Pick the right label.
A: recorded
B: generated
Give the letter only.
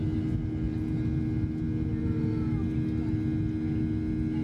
A